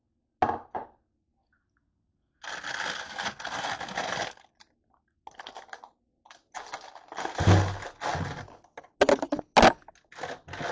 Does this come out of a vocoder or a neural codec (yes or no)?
no